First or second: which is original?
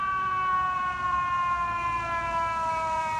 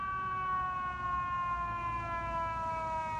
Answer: second